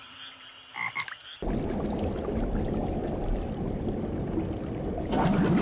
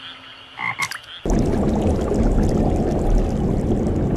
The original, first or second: second